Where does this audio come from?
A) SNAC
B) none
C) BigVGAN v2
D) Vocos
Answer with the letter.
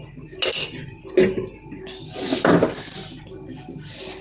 B